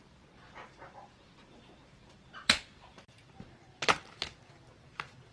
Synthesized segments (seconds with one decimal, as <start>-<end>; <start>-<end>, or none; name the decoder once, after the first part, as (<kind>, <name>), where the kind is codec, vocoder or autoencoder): 0.0-3.2 (vocoder, BigVGAN v2); 3.8-5.3